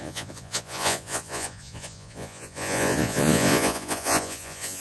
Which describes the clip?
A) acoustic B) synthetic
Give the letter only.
B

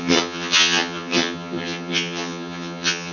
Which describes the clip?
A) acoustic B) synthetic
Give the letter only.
B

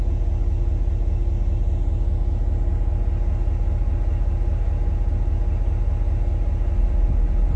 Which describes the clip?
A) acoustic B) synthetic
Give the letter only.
A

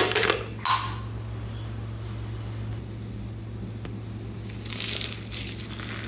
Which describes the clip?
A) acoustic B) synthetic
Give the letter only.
A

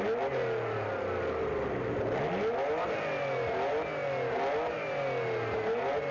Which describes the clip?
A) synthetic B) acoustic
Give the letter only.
B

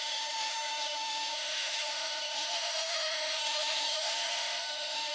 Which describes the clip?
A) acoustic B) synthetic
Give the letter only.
B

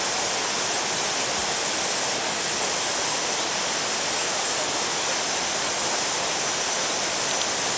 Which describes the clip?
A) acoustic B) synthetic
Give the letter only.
A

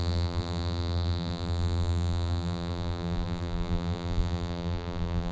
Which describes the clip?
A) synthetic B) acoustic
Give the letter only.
A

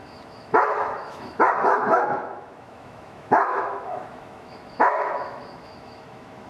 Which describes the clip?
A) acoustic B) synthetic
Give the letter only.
B